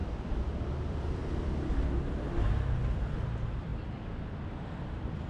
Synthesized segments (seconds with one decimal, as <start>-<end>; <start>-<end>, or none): 0.7-1.2; 3.0-3.7; 4.3-5.3